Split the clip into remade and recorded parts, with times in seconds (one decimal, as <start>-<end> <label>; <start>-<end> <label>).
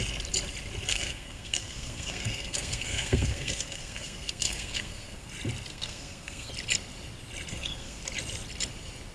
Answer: 0.0-0.9 recorded; 0.9-5.3 remade; 5.3-5.7 recorded; 5.7-6.5 remade; 6.5-7.5 recorded; 7.5-8.0 remade; 8.0-9.1 recorded